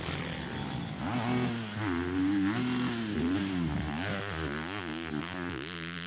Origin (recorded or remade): recorded